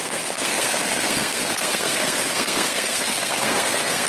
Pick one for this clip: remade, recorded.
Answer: remade